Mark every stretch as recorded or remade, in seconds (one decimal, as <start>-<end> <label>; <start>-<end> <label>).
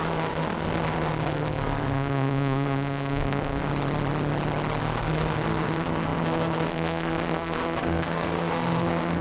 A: 0.0-3.7 remade; 3.7-4.8 recorded; 4.8-9.2 remade